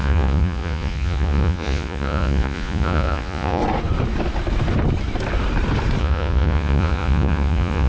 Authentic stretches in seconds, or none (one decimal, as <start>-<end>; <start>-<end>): 3.6-6.0